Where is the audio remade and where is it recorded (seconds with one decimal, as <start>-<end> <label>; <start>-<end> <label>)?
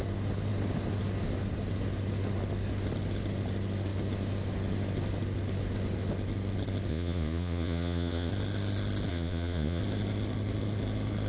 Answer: 0.0-6.9 recorded; 6.9-8.3 remade; 8.3-9.1 recorded; 9.1-9.8 remade; 9.8-11.3 recorded